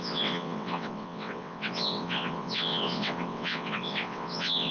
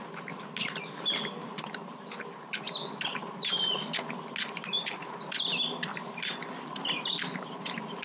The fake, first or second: first